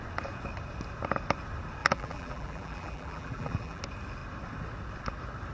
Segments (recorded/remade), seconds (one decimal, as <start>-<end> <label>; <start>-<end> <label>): 0.0-1.8 recorded; 1.8-3.8 remade; 3.8-5.5 recorded